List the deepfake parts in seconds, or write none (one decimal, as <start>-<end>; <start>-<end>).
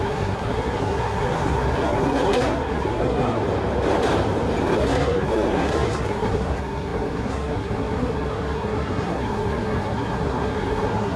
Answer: 0.0-3.4; 4.6-11.2